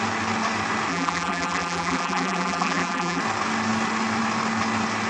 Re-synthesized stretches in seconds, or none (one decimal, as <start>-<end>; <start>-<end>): 0.9-3.2